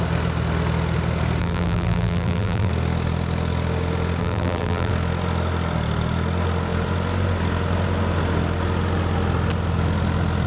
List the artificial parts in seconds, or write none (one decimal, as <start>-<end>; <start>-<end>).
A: 1.4-2.7; 4.2-4.9